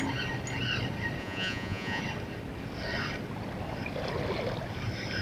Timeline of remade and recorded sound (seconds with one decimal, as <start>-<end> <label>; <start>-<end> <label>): 0.0-1.2 recorded; 1.2-2.0 remade; 2.0-5.2 recorded

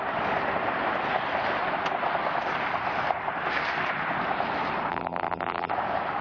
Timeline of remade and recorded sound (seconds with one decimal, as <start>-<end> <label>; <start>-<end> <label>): 0.0-4.9 recorded; 4.9-5.7 remade; 5.7-6.2 recorded